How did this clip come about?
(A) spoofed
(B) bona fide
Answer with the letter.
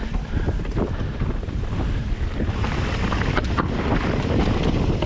A